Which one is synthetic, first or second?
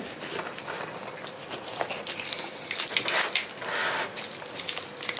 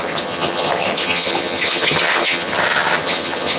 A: second